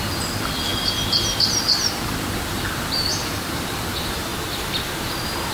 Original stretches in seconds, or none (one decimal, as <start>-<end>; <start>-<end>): 4.3-5.5